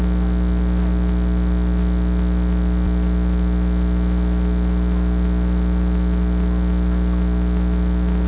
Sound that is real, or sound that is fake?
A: real